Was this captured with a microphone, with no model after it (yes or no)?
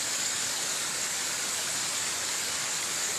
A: no